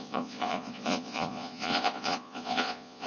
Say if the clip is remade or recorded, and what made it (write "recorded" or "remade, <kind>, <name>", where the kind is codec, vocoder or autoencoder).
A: remade, vocoder, Vocos